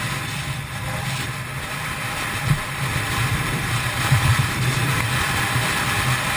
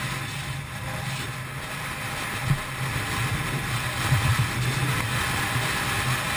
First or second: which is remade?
first